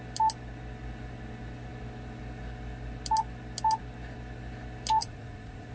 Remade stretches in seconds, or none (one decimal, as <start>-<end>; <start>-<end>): 5.0-5.7